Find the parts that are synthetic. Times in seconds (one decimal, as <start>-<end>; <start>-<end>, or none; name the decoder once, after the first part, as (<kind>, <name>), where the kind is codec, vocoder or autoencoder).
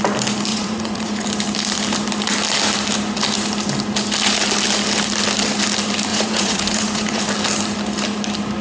0.5-1.2 (vocoder, Vocos); 6.1-7.2